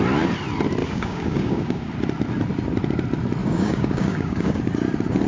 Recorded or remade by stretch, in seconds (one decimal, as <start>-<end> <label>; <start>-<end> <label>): 0.0-0.8 recorded; 0.8-1.9 remade; 1.9-3.4 recorded; 3.4-4.6 remade; 4.6-5.3 recorded